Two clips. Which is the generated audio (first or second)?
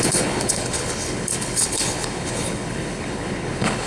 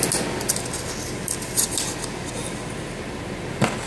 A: first